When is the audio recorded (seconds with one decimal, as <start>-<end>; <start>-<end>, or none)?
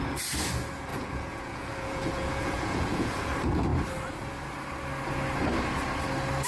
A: 0.0-0.9; 3.3-6.5